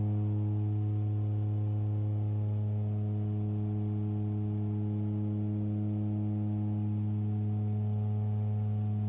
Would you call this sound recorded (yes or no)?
yes